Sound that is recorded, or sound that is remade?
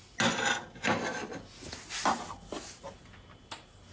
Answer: recorded